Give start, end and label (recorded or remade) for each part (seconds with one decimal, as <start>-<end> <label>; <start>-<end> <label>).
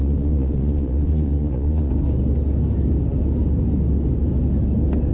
0.0-1.9 remade; 1.9-5.1 recorded